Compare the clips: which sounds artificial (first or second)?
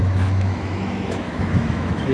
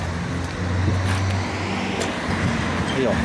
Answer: first